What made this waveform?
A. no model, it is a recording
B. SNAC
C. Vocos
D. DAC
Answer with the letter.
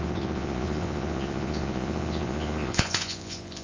C